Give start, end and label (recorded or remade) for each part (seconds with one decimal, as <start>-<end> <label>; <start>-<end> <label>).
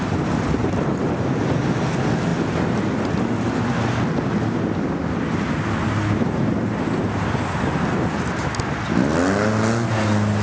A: 0.0-10.4 recorded